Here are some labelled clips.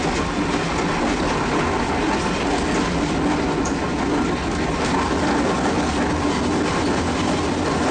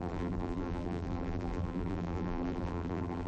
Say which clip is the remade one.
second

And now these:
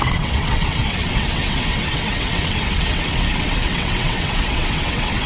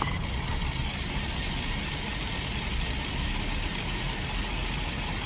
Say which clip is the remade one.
first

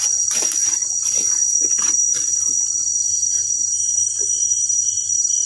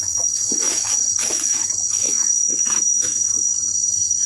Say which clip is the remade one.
second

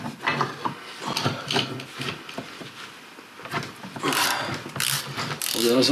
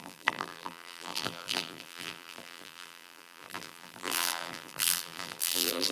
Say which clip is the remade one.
second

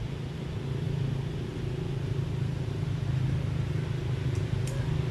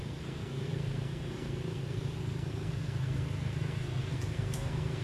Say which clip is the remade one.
second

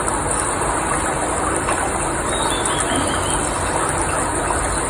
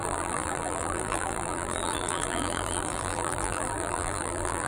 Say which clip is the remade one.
second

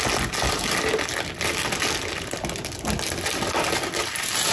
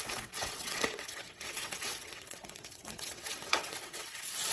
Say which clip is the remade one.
second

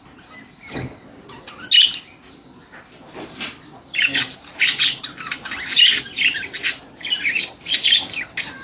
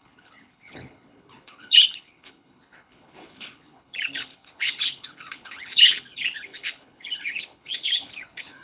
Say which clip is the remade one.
second